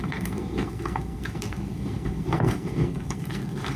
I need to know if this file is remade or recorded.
remade